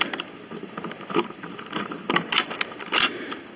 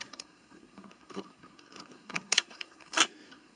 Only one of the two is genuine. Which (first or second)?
first